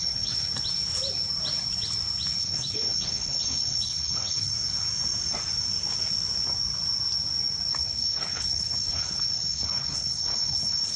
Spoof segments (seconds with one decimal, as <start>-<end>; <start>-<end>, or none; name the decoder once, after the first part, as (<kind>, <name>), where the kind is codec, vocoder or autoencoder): 0.0-0.5 (codec, HILCodec); 2.4-4.5; 7.7-11.0